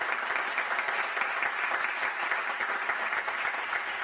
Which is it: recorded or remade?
recorded